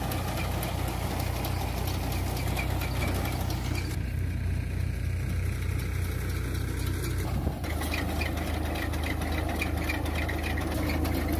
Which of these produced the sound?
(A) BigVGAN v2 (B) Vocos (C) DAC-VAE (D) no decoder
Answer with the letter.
D